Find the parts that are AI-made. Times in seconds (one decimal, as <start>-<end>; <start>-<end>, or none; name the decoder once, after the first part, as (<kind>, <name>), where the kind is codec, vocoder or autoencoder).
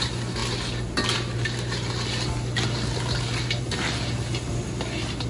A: none